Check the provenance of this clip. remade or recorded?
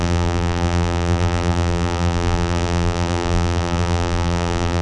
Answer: remade